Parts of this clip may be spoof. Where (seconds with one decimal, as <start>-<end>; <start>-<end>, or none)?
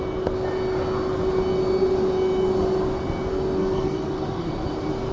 3.3-4.5